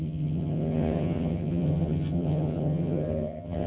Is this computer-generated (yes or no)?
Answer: yes